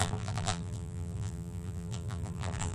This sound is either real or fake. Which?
fake